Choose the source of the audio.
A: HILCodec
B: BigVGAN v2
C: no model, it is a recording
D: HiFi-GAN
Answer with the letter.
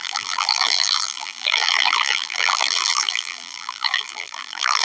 B